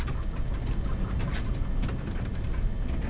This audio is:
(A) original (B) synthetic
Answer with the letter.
A